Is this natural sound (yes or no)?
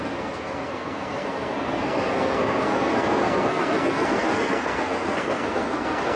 no